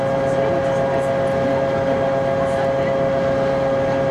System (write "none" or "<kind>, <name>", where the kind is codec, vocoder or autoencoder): none